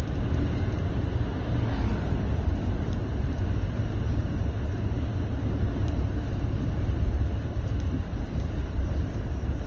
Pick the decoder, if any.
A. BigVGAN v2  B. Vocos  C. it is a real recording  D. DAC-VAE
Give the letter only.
A